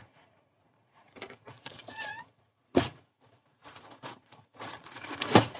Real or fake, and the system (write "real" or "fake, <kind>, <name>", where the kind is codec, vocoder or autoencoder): fake, vocoder, Vocos